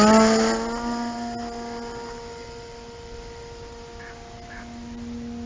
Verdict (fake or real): real